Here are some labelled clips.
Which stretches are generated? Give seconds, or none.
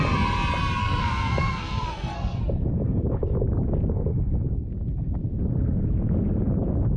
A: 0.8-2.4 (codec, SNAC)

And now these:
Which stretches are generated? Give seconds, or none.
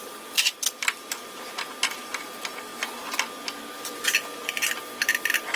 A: 0.0-1.5 (vocoder, BigVGAN v2)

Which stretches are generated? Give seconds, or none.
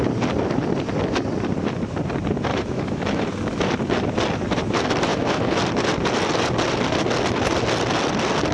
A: 2.5-3.2 (autoencoder, DAC-VAE); 5.1-5.6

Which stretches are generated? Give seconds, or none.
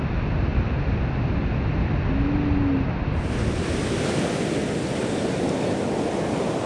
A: none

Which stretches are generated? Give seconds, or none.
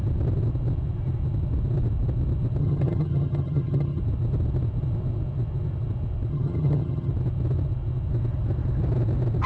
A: 2.6-4.0 (vocoder, HiFi-GAN); 6.3-7.1